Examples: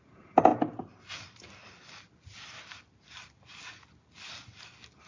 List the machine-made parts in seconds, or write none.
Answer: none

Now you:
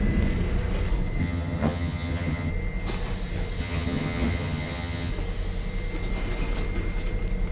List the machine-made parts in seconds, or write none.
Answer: 1.2-2.5 (vocoder, HiFi-GAN); 3.6-5.1

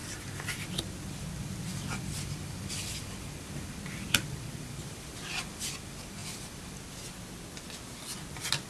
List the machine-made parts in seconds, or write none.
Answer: none

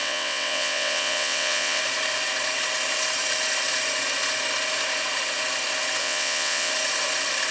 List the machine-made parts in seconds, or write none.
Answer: 0.0-1.8 (vocoder, WaveNeXt); 6.0-6.7

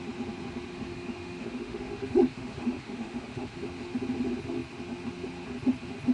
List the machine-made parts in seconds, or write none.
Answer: 0.7-3.6 (autoencoder, DAC-VAE)

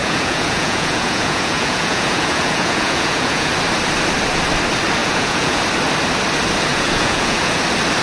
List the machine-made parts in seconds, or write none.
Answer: 0.0-3.5 (vocoder, Vocos); 5.0-5.6; 6.7-7.6

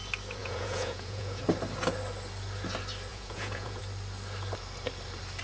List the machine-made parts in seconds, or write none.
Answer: 0.4-1.4 (vocoder, Vocos); 3.1-3.8